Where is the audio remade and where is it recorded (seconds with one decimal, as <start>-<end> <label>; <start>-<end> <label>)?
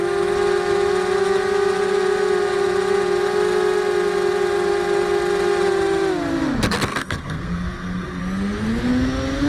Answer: 0.0-6.9 recorded; 6.9-8.2 remade; 8.2-9.5 recorded